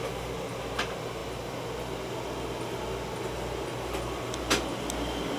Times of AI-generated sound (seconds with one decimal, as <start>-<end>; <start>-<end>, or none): none

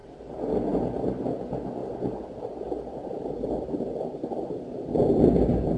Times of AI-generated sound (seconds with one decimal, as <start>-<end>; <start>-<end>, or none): 0.0-1.2; 1.8-2.6; 3.0-3.8

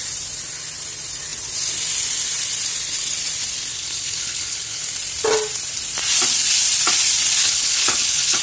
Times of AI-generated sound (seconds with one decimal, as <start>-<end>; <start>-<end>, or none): 3.7-4.8; 7.4-8.4

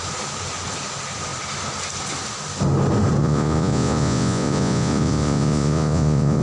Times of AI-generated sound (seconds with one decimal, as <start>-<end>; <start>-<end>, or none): 3.2-6.4

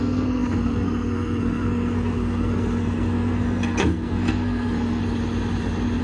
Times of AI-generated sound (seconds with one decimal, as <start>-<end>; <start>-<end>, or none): 0.0-5.0

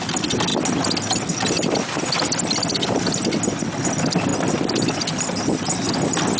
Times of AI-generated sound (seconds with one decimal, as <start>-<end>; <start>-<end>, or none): none

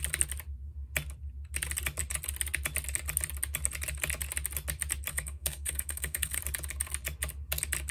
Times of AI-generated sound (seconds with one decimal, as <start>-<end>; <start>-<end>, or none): 5.1-6.4

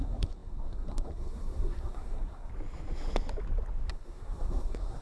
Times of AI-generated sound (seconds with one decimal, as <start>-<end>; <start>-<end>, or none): 0.0-2.5; 3.9-5.0